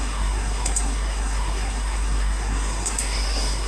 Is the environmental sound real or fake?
fake